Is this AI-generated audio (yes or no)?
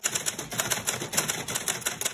no